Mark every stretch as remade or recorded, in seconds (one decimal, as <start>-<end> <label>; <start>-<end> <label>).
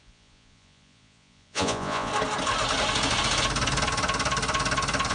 0.0-2.1 remade; 2.1-5.1 recorded